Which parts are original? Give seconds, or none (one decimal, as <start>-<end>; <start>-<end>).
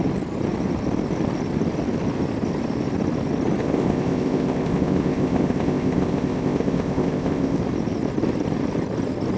0.0-3.6; 7.6-9.4